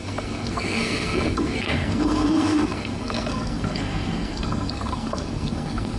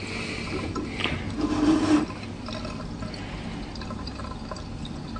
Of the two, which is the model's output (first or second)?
first